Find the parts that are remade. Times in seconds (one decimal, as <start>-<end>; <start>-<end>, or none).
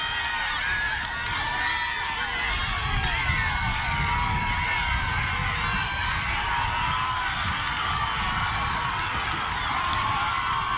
3.7-4.4